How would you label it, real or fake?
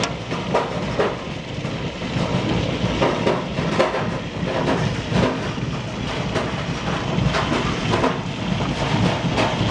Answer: real